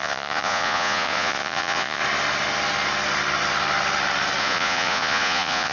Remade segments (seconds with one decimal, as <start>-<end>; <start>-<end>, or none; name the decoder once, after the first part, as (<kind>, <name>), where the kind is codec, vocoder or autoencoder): 0.0-2.0 (vocoder, Vocos); 4.4-5.7